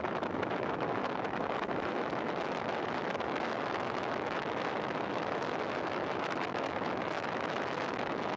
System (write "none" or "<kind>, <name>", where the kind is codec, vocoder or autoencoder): autoencoder, DAC-VAE